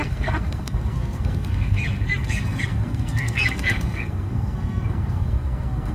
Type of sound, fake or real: fake